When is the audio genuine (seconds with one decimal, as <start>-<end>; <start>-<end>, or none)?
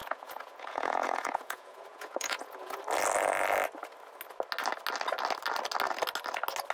2.8-6.7